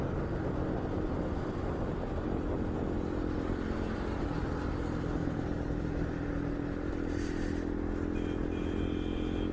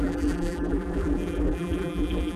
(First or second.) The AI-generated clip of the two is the second